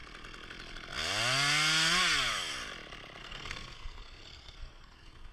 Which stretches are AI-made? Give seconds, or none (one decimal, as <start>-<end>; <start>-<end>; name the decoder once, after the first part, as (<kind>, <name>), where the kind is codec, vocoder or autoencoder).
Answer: 3.2-5.3 (codec, SNAC)